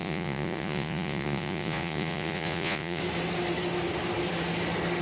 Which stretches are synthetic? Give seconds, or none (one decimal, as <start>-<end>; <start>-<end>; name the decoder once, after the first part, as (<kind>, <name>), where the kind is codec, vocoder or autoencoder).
0.0-3.0 (vocoder, Vocos)